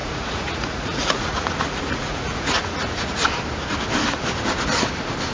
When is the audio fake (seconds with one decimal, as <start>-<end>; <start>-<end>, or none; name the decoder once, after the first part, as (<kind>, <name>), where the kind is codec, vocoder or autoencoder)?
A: 0.0-3.2 (vocoder, Vocos)